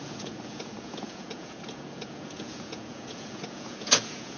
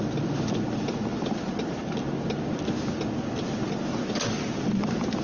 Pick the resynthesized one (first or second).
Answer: first